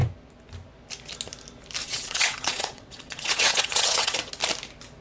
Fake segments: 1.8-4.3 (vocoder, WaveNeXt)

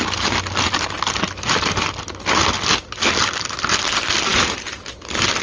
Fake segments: none

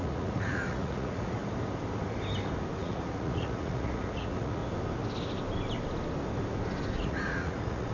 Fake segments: 0.0-1.4 (vocoder, Vocos); 2.8-4.6; 6.9-7.9

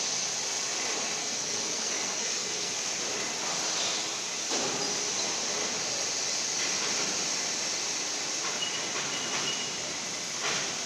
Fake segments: 1.2-3.0 (codec, SNAC)

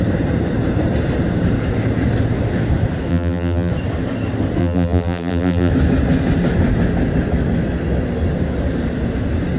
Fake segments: 3.1-3.7 (vocoder, BigVGAN v2); 4.6-5.7

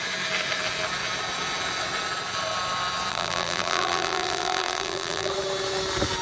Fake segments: 3.1-5.3 (vocoder, BigVGAN v2)

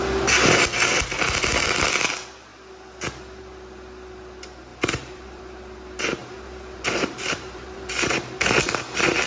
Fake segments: 4.7-5.4 (vocoder, BigVGAN v2); 6.2-7.9

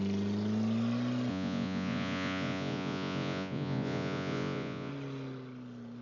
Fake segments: 1.3-4.9 (vocoder, Vocos)